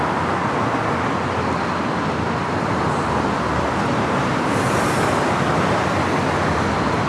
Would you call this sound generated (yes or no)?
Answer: no